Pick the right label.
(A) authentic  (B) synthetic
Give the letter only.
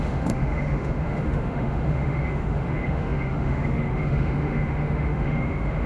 B